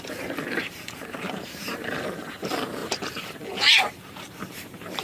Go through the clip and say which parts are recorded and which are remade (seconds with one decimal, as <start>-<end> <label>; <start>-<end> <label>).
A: 0.0-5.0 remade